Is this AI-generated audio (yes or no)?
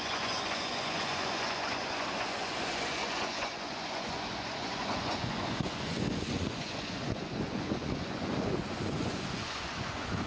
yes